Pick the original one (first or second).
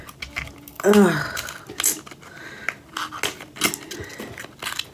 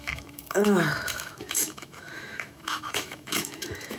first